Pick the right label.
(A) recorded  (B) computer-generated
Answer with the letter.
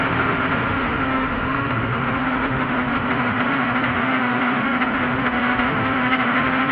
B